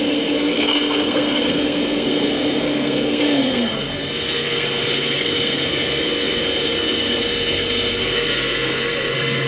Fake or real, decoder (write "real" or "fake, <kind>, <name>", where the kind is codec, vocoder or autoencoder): fake, codec, SNAC